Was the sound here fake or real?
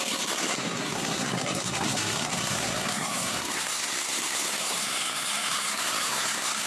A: fake